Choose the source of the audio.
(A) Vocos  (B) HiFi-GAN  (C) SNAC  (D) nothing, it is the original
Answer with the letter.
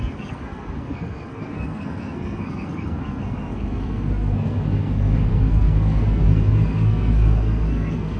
C